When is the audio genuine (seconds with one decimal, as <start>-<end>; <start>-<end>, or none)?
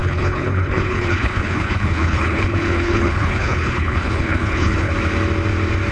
4.9-5.9